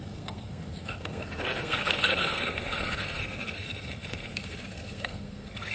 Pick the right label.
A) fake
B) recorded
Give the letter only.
A